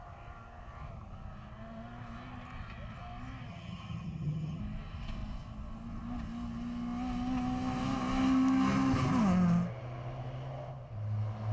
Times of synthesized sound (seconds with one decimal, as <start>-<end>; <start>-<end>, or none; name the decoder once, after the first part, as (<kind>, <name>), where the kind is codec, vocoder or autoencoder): 3.5-4.6 (vocoder, HiFi-GAN)